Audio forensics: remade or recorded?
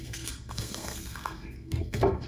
remade